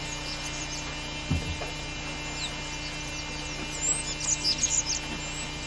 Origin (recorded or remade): recorded